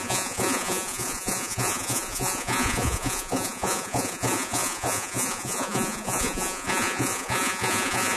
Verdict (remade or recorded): remade